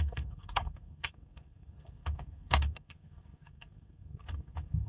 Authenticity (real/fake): fake